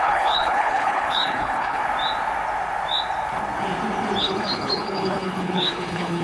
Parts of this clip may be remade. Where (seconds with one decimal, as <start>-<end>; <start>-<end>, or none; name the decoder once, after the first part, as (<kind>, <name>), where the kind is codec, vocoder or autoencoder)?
0.0-1.8 (codec, HILCodec); 4.2-6.2

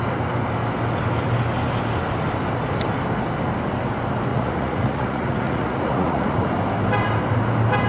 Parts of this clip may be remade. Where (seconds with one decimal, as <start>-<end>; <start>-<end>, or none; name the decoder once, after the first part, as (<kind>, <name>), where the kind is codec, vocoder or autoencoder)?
4.3-6.5 (vocoder, Vocos)

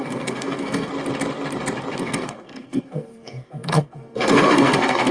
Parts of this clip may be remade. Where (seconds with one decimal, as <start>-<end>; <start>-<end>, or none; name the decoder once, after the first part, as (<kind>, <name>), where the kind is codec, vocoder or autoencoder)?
0.0-0.9 (codec, SNAC); 2.0-5.1

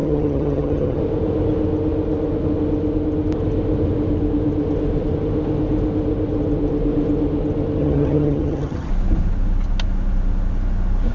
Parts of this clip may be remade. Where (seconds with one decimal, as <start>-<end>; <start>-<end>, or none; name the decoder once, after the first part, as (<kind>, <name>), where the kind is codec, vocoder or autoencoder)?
0.0-1.0 (vocoder, HiFi-GAN); 7.8-8.9

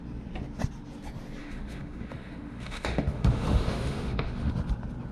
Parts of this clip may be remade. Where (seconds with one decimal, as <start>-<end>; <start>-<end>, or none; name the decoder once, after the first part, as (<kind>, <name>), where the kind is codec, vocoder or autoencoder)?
1.4-4.5 (autoencoder, DAC-VAE)

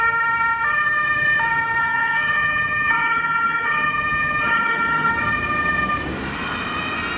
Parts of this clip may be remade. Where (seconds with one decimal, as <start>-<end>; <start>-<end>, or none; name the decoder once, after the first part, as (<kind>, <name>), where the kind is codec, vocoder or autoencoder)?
1.8-5.1 (vocoder, HiFi-GAN)